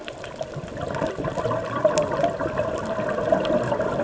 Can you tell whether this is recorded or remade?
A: recorded